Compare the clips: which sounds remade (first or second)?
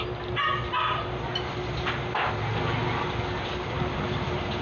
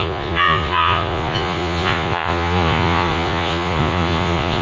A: second